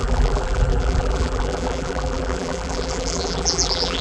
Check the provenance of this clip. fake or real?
fake